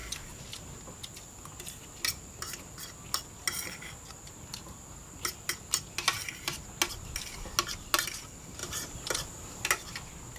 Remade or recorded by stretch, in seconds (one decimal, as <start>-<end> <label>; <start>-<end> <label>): 0.0-10.4 recorded